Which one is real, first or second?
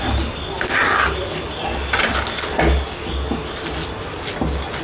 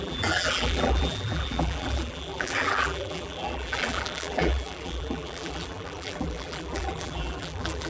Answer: first